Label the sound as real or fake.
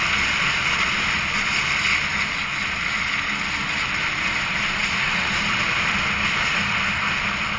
real